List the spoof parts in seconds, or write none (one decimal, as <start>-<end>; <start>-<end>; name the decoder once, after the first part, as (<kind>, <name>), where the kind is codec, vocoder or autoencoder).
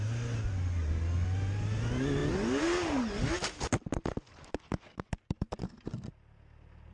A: none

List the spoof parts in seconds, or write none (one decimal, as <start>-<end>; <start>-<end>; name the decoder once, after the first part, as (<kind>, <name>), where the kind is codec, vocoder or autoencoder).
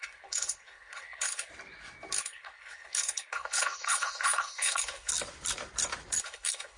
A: 0.0-1.5 (codec, HILCodec); 2.2-5.1; 6.2-6.8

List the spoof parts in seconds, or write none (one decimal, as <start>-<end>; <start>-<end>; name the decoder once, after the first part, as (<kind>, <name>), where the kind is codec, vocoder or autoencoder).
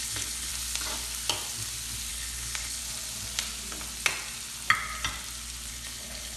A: 0.0-0.5 (codec, HILCodec); 2.1-2.8; 5.7-6.4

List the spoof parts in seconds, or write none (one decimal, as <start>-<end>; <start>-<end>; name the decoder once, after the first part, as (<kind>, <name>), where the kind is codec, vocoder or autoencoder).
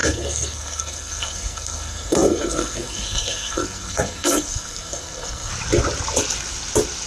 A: 0.0-5.5 (codec, SNAC)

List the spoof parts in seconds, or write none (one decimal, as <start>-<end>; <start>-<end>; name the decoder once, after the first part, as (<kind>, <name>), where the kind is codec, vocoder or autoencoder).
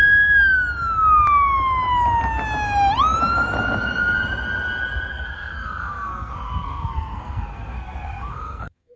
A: 5.1-9.0 (codec, SNAC)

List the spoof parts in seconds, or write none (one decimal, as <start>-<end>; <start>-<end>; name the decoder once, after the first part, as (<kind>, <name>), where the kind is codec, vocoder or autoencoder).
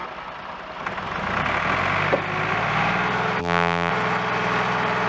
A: 3.4-3.9 (vocoder, BigVGAN v2)